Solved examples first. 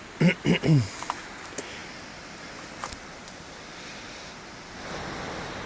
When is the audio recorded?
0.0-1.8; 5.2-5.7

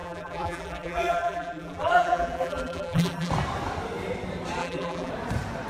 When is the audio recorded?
3.3-4.6; 5.1-5.7

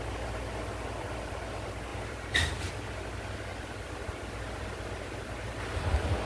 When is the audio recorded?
0.0-1.9; 2.7-6.3

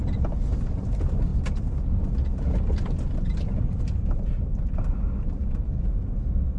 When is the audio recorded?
1.3-3.4; 4.5-6.6

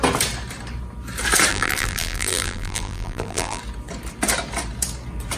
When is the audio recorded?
0.0-1.5; 3.6-5.4